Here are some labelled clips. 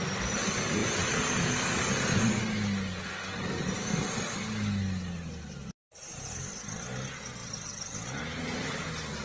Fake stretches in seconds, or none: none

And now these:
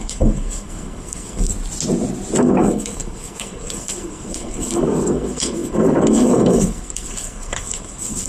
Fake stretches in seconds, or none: 0.0-1.5 (codec, SNAC); 2.4-8.3

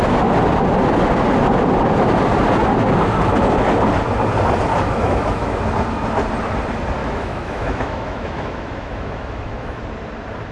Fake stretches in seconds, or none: 4.7-5.6 (autoencoder, DAC-VAE); 7.0-9.8

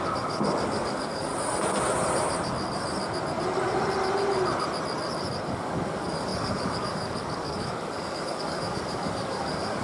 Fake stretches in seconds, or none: 0.0-1.3 (codec, DAC); 5.5-9.8

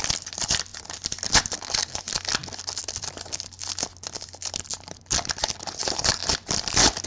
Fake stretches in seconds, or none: none

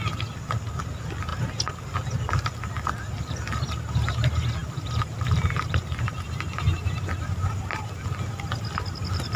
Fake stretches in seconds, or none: 4.6-7.9 (vocoder, BigVGAN v2)

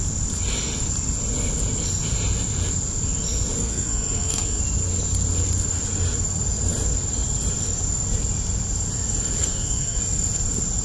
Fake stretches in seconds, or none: 3.6-4.6 (codec, SNAC); 9.4-10.0